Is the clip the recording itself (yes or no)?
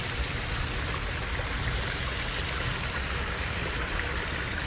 yes